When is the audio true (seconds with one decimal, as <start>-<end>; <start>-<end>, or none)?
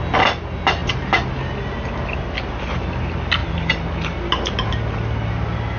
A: 0.0-5.8